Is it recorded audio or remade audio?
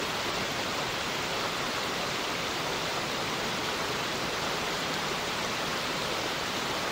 recorded